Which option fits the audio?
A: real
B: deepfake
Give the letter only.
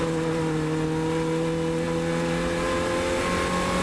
A